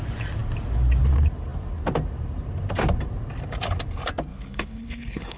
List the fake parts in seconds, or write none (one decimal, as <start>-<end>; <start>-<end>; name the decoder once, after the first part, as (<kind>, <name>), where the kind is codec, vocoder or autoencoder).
4.3-5.4 (codec, HILCodec)